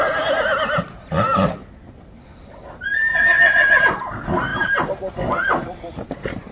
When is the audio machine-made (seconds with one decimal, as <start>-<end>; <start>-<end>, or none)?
3.1-3.8